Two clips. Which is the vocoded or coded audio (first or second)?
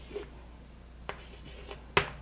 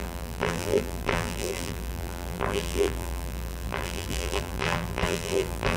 second